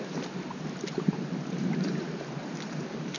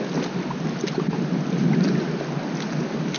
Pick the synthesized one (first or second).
first